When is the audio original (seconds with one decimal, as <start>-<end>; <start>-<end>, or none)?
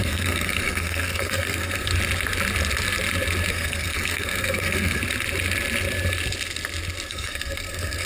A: 1.9-3.5; 5.0-7.1